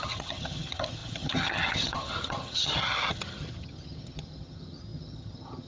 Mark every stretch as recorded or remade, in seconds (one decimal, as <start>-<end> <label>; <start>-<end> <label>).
0.0-5.7 remade